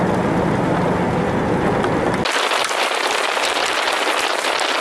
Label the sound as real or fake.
real